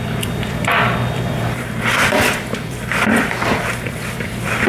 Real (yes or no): no